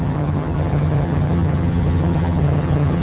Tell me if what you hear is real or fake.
fake